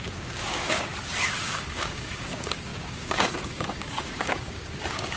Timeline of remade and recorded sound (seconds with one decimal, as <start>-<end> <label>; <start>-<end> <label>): 0.0-0.9 remade; 0.9-1.4 recorded; 1.4-5.2 remade

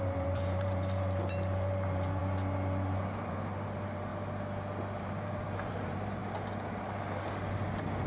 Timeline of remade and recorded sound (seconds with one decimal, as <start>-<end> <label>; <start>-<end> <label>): 0.0-2.2 remade; 2.2-3.3 recorded; 3.3-4.1 remade; 4.1-5.0 recorded; 5.0-6.2 remade; 6.2-8.1 recorded